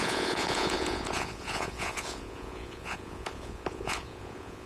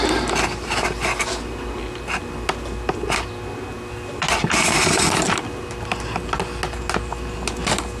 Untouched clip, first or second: second